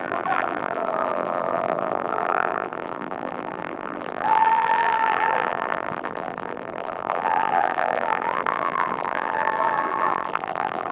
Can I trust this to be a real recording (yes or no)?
no